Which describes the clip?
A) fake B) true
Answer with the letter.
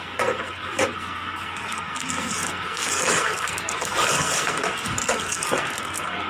A